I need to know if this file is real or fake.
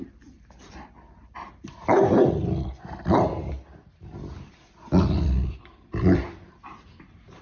fake